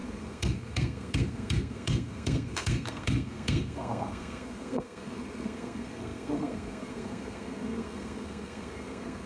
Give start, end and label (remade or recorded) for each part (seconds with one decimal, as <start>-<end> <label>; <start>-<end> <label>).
0.0-9.3 remade